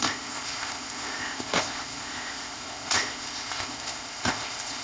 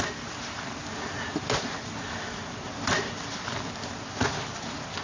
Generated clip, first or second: first